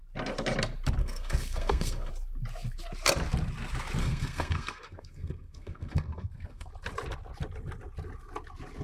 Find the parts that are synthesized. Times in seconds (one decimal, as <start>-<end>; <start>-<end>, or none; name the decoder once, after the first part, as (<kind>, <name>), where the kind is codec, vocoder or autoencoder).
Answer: 1.0-2.1 (codec, SNAC); 4.0-6.7